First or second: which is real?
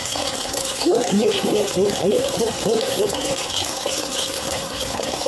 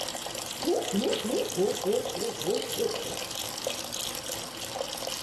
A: second